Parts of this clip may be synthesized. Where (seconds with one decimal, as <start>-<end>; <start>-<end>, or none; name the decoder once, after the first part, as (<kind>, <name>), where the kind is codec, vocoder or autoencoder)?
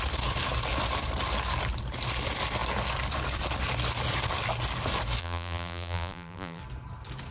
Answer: 5.2-6.6 (vocoder, BigVGAN v2)